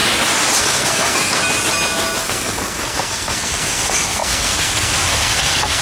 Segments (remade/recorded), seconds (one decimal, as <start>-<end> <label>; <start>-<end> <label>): 0.0-0.6 recorded; 0.6-1.4 remade; 1.4-2.2 recorded; 2.2-5.8 remade